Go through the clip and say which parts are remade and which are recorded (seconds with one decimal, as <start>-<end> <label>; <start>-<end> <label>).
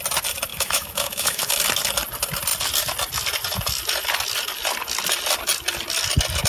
0.0-0.5 recorded; 0.5-1.5 remade; 1.5-6.5 recorded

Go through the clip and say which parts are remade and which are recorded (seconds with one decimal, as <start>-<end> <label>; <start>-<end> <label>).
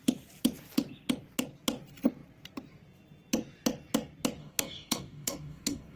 0.0-4.4 recorded; 4.4-6.0 remade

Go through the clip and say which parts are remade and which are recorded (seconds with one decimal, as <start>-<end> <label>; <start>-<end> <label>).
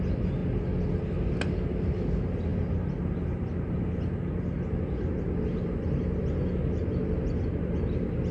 0.0-8.3 recorded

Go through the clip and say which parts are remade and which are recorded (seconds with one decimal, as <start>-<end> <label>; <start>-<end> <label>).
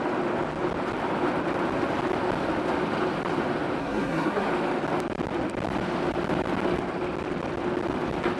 0.0-3.8 recorded; 3.8-4.5 remade; 4.5-8.4 recorded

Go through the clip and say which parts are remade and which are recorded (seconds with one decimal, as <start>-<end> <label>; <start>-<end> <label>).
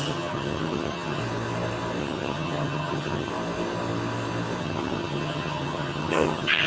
0.0-1.2 remade; 1.2-2.0 recorded; 2.0-3.3 remade; 3.3-4.6 recorded; 4.6-6.7 remade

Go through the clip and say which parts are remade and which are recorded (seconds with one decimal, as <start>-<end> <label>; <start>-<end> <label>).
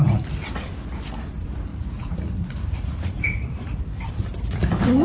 0.0-1.7 recorded; 1.7-3.8 remade; 3.8-5.0 recorded